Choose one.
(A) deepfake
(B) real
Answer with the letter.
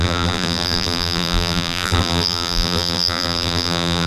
A